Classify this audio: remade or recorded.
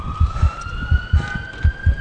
recorded